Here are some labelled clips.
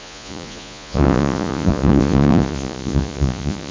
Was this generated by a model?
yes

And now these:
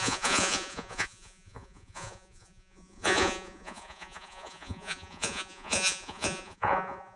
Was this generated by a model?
yes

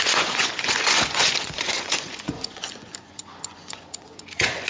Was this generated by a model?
yes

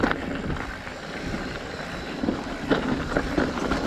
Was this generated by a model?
no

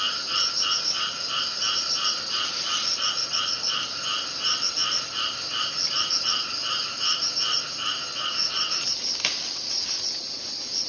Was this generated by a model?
no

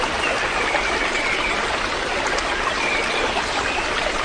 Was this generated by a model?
no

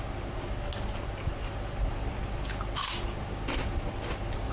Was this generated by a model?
no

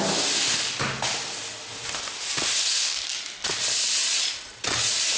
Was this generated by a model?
no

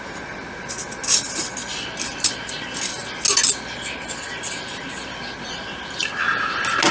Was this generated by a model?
no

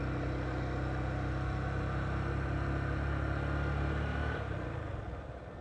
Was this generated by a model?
no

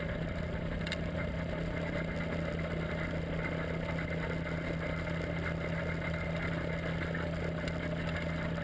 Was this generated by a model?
no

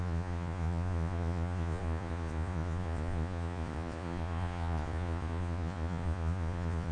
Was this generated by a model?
yes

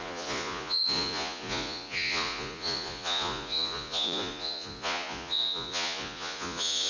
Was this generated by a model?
yes